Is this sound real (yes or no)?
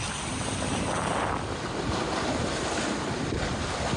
yes